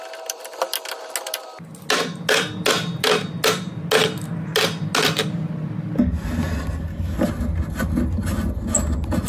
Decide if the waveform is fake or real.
real